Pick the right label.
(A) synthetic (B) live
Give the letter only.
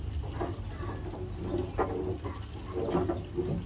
B